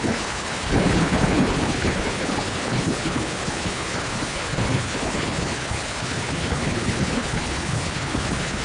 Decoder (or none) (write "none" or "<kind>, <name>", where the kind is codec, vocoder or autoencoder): codec, HILCodec